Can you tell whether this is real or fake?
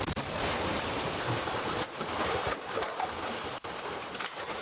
fake